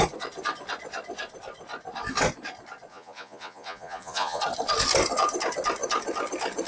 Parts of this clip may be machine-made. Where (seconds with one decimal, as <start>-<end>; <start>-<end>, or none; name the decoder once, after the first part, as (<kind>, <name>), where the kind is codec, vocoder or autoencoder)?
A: 2.9-4.4 (vocoder, Vocos)